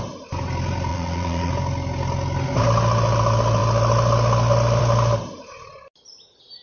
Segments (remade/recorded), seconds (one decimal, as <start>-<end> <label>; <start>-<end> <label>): 0.0-0.9 recorded; 0.9-1.5 remade; 1.5-6.6 recorded